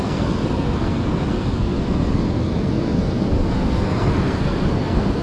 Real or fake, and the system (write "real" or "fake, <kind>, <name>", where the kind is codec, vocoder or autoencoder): fake, codec, SNAC